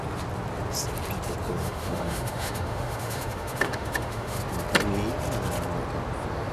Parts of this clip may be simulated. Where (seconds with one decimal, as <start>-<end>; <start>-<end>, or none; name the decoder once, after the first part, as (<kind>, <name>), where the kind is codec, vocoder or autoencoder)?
1.6-4.4 (autoencoder, DAC-VAE)